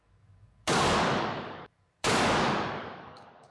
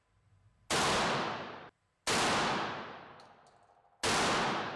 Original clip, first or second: second